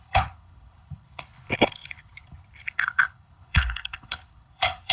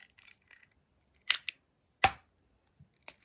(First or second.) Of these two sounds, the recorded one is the second